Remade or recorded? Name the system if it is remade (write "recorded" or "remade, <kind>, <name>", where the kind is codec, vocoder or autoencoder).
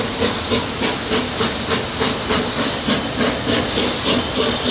recorded